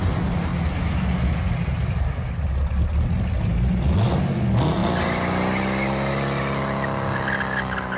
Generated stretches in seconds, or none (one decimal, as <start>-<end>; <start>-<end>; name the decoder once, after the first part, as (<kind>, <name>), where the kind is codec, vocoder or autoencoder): none